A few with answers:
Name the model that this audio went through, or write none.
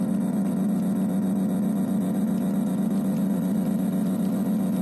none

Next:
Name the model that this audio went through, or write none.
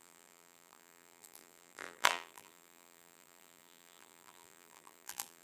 vocoder, BigVGAN v2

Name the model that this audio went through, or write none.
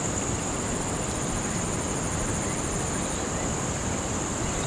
none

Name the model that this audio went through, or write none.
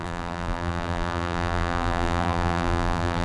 vocoder, BigVGAN v2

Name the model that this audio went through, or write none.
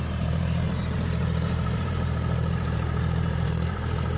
vocoder, BigVGAN v2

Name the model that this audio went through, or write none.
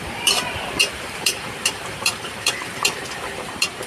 vocoder, BigVGAN v2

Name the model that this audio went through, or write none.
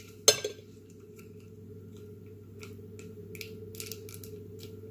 none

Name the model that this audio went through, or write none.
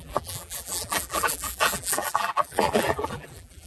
vocoder, BigVGAN v2